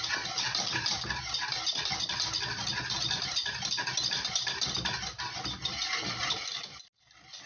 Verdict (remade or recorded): recorded